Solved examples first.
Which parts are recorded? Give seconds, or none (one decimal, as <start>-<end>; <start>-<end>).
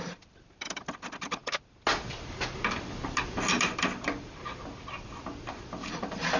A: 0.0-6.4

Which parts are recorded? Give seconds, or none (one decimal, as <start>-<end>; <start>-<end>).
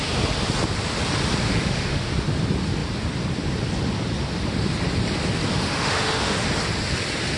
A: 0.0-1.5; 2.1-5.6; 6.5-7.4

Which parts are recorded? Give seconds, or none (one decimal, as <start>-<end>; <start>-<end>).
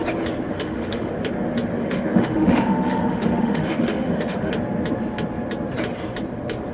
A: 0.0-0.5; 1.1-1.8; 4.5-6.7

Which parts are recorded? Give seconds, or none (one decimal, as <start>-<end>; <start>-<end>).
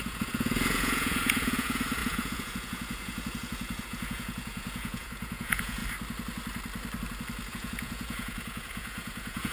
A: 5.8-7.5